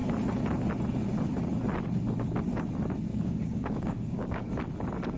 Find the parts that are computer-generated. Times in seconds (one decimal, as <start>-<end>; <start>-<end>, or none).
3.1-4.5